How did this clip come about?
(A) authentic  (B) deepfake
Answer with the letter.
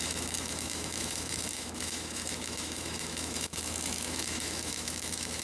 B